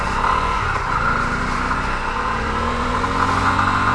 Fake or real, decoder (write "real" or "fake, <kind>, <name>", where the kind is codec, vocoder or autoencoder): fake, vocoder, Vocos